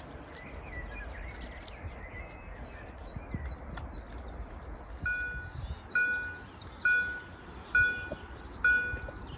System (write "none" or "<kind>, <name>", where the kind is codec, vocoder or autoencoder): none